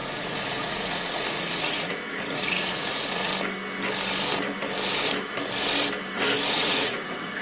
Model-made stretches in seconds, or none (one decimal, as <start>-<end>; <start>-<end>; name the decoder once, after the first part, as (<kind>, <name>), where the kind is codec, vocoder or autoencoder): 0.0-3.3 (vocoder, Vocos); 6.5-7.4